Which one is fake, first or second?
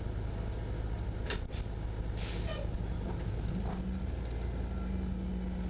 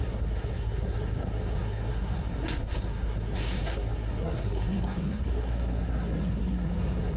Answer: second